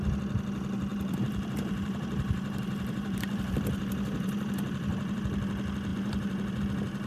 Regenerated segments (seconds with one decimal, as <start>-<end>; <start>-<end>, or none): 0.9-5.2; 5.9-6.6